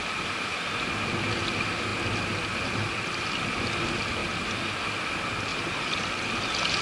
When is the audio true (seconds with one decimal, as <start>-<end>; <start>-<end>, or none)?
0.0-4.2; 4.8-5.5; 6.3-6.8